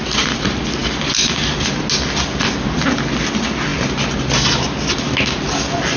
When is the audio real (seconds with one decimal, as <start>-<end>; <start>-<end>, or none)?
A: 0.0-6.0